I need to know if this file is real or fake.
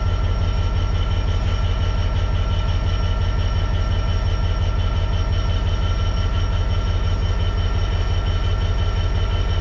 real